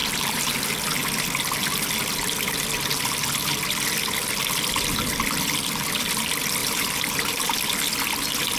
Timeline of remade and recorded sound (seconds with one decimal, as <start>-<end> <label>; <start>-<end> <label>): 0.0-0.5 remade; 0.5-6.6 recorded; 6.6-7.5 remade; 7.5-8.6 recorded